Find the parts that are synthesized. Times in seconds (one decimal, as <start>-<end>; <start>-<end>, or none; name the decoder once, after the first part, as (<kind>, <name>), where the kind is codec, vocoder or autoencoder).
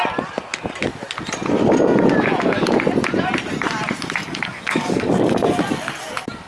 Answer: 4.5-5.1 (codec, DAC)